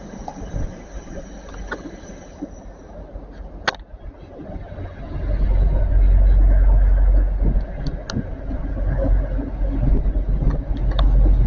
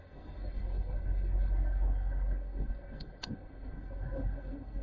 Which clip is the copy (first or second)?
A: second